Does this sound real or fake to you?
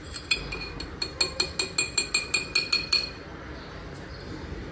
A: real